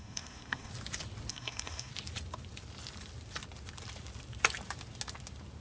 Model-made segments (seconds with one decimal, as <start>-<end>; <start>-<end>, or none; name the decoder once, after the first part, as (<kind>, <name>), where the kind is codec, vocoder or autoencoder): 0.0-0.7 (codec, SNAC); 1.3-1.9

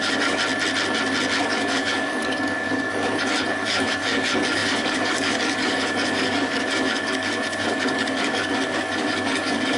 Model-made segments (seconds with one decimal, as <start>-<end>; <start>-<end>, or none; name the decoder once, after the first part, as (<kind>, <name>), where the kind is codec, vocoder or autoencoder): 0.0-0.4 (codec, DAC); 1.4-9.8

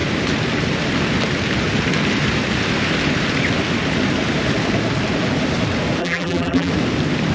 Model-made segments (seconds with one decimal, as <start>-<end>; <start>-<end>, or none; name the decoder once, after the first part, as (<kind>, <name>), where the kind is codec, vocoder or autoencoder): 6.0-6.7 (vocoder, BigVGAN v2)

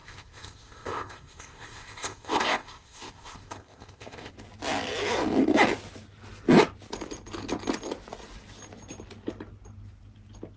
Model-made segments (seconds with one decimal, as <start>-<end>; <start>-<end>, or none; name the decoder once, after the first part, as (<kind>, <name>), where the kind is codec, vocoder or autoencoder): 0.0-4.3 (codec, ZipCodec)

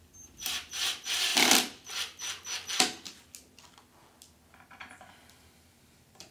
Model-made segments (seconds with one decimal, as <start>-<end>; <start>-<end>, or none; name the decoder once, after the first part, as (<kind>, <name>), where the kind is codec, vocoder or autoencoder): 0.0-1.3 (vocoder, BigVGAN v2); 5.1-6.3

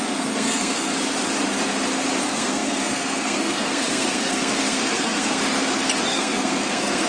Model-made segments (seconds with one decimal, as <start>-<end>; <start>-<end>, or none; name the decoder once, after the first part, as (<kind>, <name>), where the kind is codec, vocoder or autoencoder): 0.0-0.9 (codec, SNAC); 2.2-5.4; 6.1-7.1

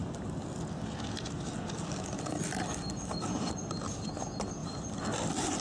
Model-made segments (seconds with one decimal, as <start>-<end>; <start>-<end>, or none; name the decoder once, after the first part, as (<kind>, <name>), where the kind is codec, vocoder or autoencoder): none